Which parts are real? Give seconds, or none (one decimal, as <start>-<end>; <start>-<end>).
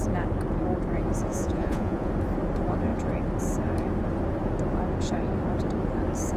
0.0-1.3; 2.1-6.4